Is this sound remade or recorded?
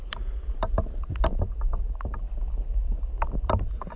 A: recorded